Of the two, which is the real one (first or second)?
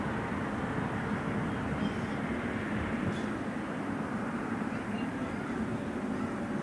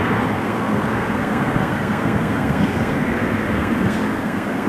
first